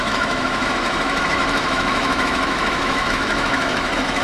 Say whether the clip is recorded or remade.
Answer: remade